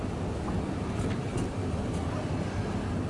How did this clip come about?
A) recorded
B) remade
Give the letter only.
A